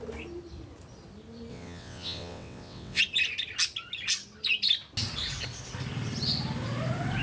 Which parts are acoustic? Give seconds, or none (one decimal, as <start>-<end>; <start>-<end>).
0.0-1.5; 3.0-7.2